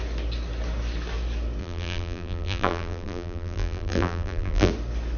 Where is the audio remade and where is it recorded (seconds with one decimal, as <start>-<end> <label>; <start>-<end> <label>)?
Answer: 0.0-1.6 recorded; 1.6-4.7 remade; 4.7-5.2 recorded